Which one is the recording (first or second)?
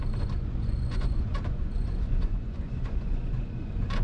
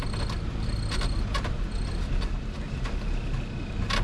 second